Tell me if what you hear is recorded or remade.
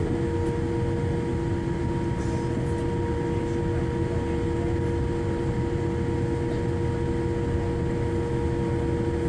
recorded